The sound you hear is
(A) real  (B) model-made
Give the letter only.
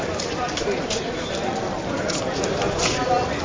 B